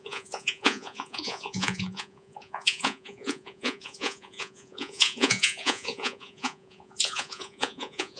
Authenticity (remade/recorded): remade